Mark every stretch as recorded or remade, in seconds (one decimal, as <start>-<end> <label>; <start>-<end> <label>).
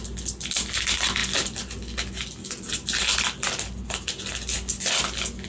0.0-5.5 recorded